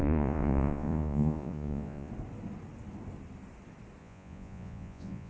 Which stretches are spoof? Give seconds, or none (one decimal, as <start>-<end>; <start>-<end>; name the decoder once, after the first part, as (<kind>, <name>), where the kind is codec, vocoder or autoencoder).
0.0-2.1 (vocoder, Vocos); 4.0-5.3